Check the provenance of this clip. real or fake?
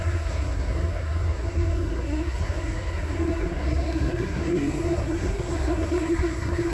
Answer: fake